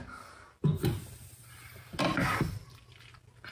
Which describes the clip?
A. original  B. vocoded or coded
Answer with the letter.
A